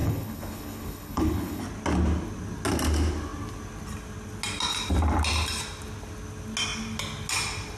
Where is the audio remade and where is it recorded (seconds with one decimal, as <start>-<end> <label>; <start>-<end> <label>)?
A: 0.0-1.6 remade; 1.6-7.8 recorded